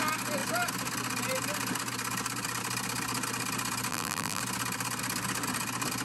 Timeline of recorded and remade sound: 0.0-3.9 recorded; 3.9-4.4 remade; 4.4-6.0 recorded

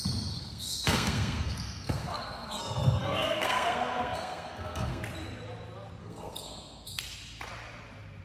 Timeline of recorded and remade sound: 0.0-0.4 recorded; 0.4-5.0 remade; 5.0-6.0 recorded; 6.0-7.0 remade; 7.0-8.2 recorded

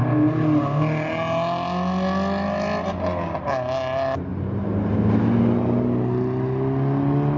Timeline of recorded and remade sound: 0.0-7.4 recorded

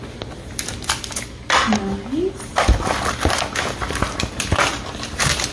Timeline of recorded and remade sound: 0.0-5.5 recorded